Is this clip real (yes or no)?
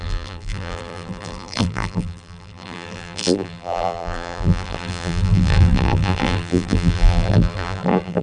no